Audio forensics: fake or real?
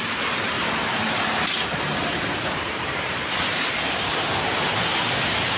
fake